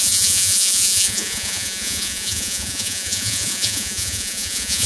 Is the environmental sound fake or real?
fake